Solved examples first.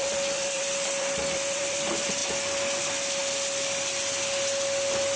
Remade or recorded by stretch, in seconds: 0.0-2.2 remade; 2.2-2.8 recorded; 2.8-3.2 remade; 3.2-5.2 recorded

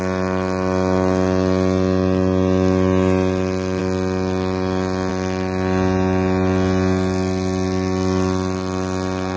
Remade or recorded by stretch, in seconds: 0.0-9.4 recorded

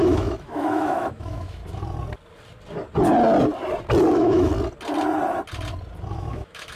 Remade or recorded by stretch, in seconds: 0.0-1.6 remade; 1.6-4.1 recorded; 4.1-4.5 remade; 4.5-6.1 recorded; 6.1-6.8 remade

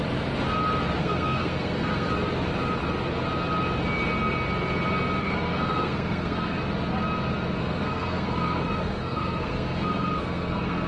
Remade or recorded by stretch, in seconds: 0.0-1.0 recorded; 1.0-2.1 remade; 2.1-5.2 recorded; 5.2-6.6 remade; 6.6-7.6 recorded; 7.6-10.9 remade